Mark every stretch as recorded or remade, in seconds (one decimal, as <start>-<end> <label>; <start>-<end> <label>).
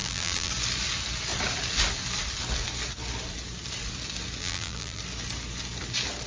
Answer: 0.0-0.5 remade; 0.5-4.4 recorded; 4.4-5.0 remade; 5.0-6.3 recorded